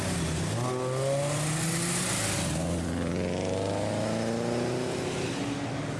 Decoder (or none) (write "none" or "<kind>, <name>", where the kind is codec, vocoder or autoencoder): none